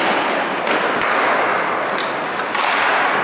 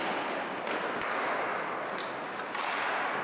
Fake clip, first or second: first